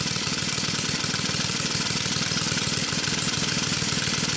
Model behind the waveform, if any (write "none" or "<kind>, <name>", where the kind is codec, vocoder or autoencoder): vocoder, BigVGAN v2